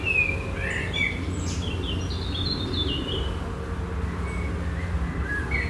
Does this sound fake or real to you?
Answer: real